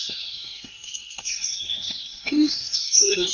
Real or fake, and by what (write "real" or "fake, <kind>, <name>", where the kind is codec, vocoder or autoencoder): fake, codec, SNAC